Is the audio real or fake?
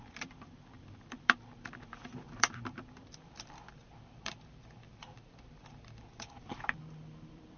fake